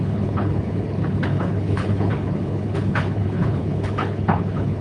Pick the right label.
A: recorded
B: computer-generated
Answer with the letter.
B